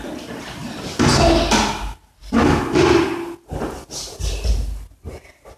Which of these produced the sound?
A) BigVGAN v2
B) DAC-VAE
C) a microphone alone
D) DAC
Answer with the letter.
C